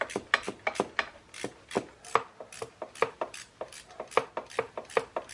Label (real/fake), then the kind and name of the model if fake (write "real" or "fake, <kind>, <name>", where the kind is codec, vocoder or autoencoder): real